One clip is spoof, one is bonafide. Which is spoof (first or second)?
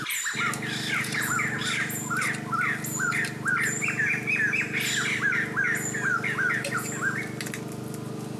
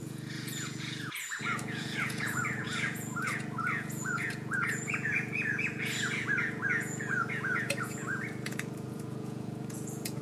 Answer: second